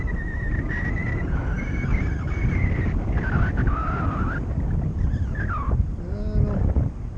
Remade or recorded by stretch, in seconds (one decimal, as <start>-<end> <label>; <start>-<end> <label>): 0.0-7.2 recorded